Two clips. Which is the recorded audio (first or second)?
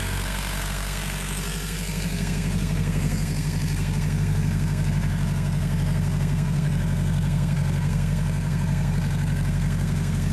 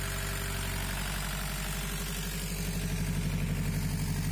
second